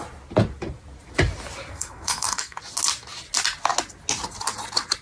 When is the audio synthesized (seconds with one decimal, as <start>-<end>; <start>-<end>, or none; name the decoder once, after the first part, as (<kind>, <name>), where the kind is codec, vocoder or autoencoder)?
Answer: 1.7-2.6 (codec, SNAC)